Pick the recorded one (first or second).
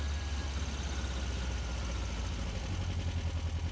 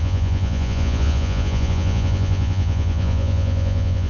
first